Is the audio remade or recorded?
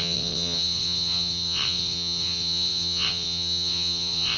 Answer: remade